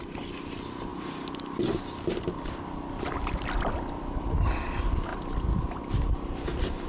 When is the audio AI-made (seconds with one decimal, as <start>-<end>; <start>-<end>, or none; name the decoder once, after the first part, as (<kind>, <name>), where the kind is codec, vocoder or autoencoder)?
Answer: 0.9-4.5 (vocoder, BigVGAN v2); 5.1-5.9